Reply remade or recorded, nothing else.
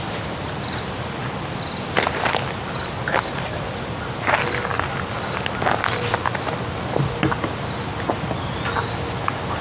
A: recorded